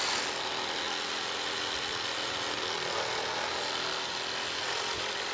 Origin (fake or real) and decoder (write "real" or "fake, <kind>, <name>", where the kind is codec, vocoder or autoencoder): real